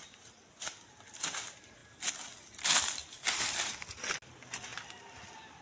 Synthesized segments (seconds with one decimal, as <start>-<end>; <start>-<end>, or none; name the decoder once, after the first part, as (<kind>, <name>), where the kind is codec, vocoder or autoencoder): none